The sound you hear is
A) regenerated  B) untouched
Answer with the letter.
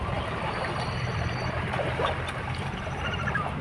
A